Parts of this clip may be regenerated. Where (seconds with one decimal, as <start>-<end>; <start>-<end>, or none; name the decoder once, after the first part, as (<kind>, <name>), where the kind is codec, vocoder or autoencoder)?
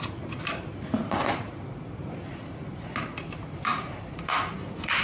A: 1.0-4.0 (vocoder, BigVGAN v2)